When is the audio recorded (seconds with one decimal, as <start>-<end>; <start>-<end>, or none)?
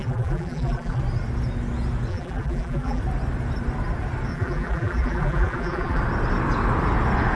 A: 1.0-2.1; 3.0-4.3; 6.0-7.4